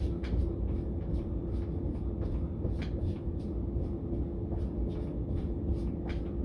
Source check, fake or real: real